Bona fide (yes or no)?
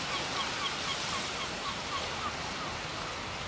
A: yes